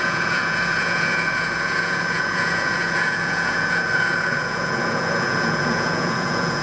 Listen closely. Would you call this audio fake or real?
fake